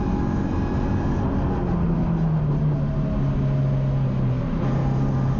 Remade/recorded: recorded